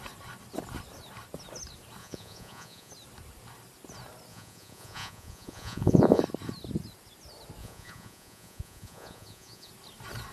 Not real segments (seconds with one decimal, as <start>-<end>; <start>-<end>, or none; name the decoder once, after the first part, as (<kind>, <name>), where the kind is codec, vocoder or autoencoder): 2.0-2.9 (vocoder, Vocos); 4.3-6.2; 7.6-9.7